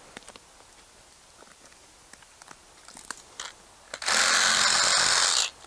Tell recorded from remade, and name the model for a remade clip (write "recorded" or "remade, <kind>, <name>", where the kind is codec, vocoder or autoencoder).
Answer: recorded